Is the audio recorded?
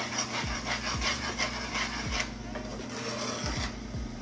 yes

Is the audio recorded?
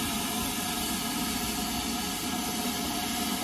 yes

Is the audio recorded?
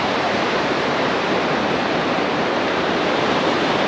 no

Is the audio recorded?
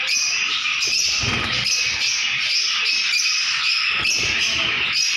yes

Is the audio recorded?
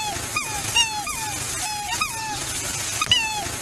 yes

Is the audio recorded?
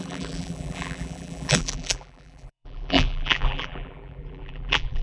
no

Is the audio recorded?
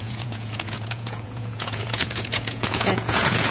no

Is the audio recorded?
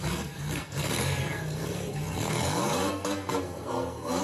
no